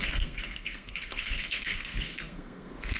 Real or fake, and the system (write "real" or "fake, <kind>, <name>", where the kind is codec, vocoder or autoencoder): fake, codec, SNAC